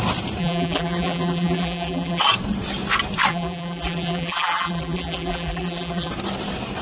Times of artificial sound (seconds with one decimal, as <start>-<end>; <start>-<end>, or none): 0.4-2.2; 3.3-6.1